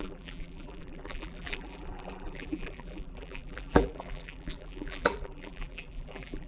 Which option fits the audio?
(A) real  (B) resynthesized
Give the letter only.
B